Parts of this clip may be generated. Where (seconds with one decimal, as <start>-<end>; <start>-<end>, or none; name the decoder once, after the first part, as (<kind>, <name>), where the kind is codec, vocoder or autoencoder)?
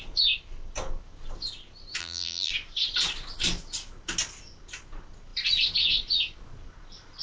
2.0-2.5 (vocoder, BigVGAN v2)